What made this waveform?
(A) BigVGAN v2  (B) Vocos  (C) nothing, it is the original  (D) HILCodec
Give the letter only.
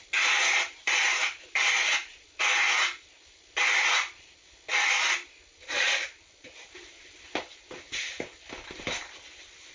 C